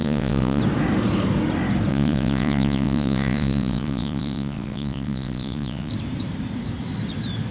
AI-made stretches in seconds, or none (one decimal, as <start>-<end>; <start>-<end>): 0.0-0.6; 1.9-5.9